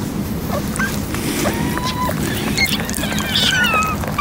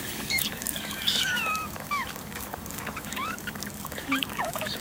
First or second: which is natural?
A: first